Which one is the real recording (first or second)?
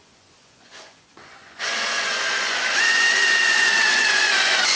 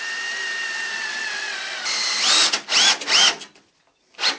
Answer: second